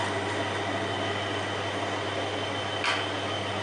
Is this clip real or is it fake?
real